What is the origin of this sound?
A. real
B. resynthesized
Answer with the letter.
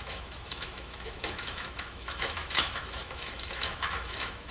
B